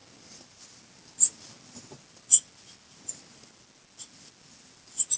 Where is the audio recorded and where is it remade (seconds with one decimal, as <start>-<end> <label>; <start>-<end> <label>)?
0.0-5.2 recorded